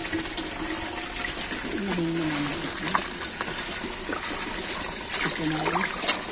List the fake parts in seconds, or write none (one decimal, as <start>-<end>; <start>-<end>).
none